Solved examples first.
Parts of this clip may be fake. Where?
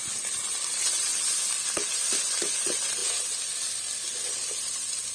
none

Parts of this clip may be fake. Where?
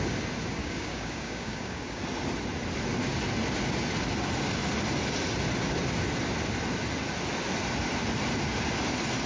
0.6-2.0 (codec, DAC)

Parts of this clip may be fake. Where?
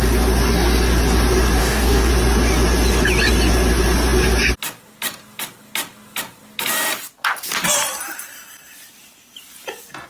1.6-2.1 (codec, DAC)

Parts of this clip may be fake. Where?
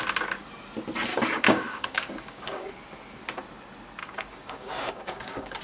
1.1-2.7 (codec, DAC); 4.0-5.6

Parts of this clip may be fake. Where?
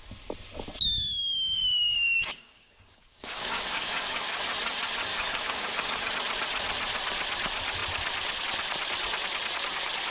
1.2-4.4 (codec, DAC); 5.1-6.1